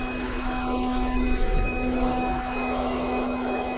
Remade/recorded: remade